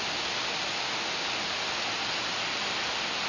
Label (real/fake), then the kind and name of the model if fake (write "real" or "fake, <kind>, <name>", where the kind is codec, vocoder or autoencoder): real